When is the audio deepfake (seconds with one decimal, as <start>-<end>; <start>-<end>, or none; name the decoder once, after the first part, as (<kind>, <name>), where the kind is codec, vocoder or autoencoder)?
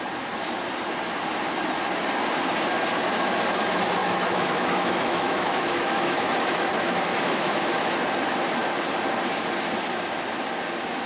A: 4.0-7.6 (autoencoder, DAC-VAE)